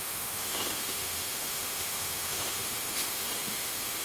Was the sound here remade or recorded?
remade